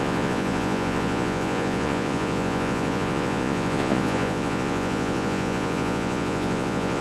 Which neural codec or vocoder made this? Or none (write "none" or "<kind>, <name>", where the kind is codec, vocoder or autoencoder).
vocoder, Vocos